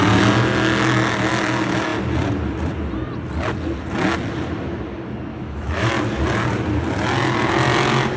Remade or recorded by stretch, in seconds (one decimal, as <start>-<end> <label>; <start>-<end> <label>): 0.0-5.3 recorded; 5.3-5.9 remade; 5.9-8.2 recorded